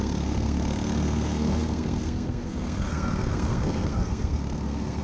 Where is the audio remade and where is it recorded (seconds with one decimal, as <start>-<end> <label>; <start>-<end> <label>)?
0.0-5.0 remade